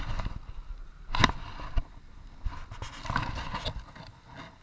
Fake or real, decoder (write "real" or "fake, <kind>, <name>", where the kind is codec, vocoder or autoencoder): real